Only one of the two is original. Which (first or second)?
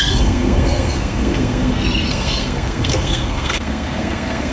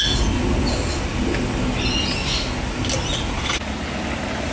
second